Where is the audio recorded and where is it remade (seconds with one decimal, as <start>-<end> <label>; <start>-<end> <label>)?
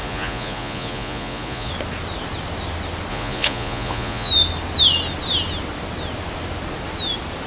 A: 0.0-1.7 remade; 1.7-3.1 recorded; 3.1-4.3 remade; 4.3-7.5 recorded